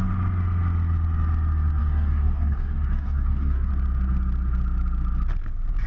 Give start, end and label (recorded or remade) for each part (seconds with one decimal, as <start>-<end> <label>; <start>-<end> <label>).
0.0-1.8 recorded; 1.8-3.7 remade; 3.7-5.9 recorded